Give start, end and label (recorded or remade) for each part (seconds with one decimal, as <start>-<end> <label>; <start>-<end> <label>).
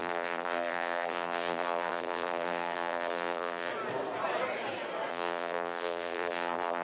0.0-3.7 remade; 3.7-5.1 recorded; 5.1-6.8 remade